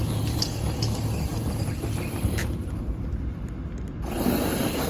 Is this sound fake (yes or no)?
no